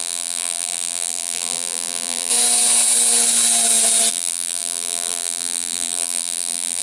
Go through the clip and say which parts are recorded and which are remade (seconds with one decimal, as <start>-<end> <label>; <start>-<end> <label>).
0.0-2.3 remade; 2.3-4.1 recorded; 4.1-6.8 remade